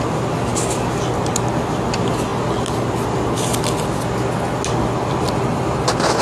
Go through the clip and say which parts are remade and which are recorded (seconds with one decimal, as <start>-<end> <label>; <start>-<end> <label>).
0.0-6.2 recorded